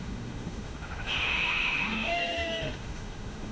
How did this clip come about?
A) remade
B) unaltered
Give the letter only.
A